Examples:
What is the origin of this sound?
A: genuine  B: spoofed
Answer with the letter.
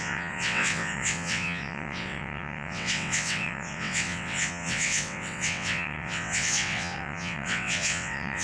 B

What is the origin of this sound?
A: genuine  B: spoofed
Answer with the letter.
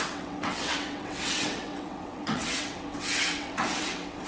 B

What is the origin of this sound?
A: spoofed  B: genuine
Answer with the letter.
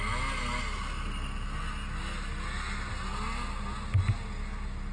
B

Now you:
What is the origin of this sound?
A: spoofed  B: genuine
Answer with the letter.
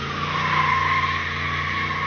B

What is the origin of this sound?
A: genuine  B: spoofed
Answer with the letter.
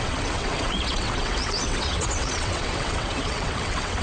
B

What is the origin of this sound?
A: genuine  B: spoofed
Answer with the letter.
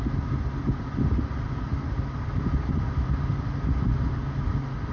A